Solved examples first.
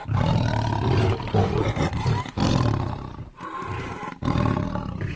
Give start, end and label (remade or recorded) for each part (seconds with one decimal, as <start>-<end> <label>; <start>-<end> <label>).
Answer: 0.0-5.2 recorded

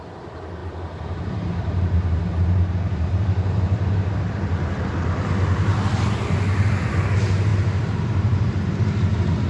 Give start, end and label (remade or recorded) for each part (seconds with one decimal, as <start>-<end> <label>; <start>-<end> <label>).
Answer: 0.0-0.6 recorded; 0.6-4.0 remade; 4.0-7.5 recorded; 7.5-8.7 remade; 8.7-9.5 recorded

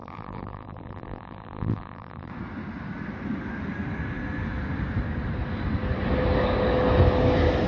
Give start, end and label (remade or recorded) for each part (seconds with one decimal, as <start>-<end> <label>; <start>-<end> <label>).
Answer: 0.0-2.3 remade; 2.3-7.7 recorded